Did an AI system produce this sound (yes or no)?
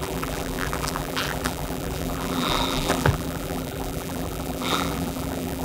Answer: yes